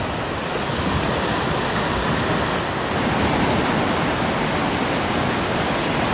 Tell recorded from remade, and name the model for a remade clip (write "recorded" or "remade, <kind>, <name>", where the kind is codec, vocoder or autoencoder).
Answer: recorded